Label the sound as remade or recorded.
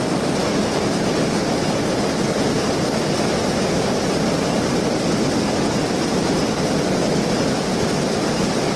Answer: recorded